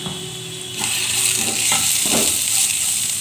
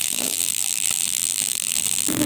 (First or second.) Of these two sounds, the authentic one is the first